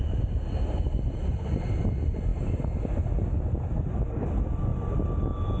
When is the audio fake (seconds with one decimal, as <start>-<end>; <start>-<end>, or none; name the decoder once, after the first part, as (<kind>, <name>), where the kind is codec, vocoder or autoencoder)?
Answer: none

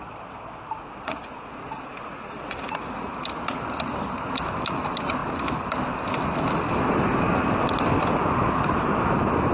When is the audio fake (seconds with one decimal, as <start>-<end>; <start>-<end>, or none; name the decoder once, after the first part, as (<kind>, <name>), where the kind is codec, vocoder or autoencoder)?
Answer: 0.8-3.1 (vocoder, Vocos)

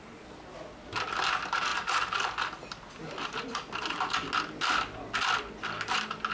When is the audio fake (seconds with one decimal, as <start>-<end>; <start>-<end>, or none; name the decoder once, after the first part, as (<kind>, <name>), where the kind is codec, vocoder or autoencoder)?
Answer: none

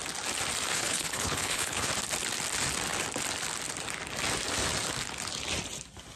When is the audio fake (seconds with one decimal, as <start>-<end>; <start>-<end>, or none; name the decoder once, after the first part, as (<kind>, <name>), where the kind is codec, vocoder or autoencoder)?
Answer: 0.7-1.9 (codec, HILCodec)

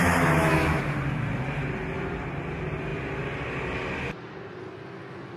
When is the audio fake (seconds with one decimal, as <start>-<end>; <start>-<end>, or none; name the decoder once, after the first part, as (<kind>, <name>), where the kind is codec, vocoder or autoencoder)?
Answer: 0.0-0.8 (autoencoder, DAC-VAE)

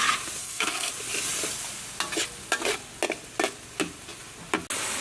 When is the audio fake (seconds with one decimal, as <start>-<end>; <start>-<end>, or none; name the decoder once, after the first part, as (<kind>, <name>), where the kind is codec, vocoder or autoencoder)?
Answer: 0.4-0.9 (codec, SNAC)